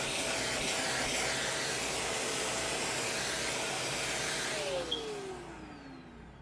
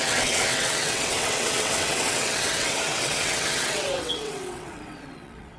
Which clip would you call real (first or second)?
first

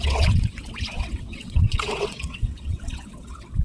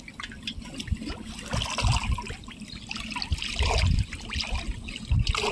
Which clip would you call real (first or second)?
second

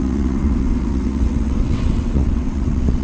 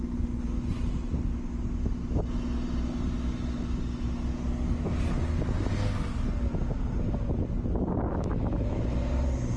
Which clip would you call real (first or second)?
second